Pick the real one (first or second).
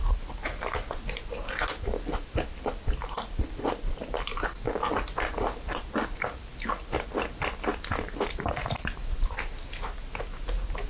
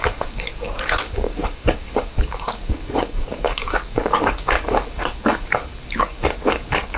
first